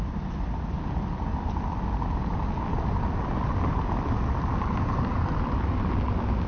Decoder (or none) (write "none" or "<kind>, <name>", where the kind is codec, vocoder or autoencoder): none